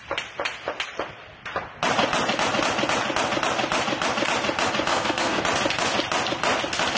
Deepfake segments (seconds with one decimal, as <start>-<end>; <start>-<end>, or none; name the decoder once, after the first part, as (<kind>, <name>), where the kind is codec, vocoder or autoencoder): 4.9-5.4 (codec, SNAC)